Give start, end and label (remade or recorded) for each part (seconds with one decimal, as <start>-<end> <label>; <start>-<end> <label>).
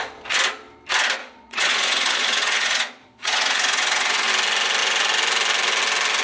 0.0-1.2 recorded; 1.2-4.3 remade; 4.3-6.2 recorded